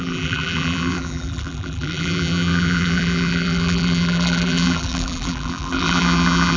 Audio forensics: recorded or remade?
remade